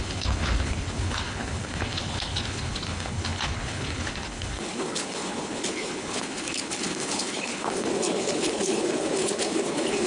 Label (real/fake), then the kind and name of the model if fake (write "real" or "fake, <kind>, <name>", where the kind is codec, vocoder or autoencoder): fake, codec, HILCodec